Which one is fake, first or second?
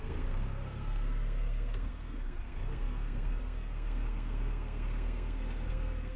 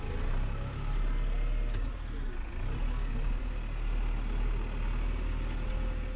first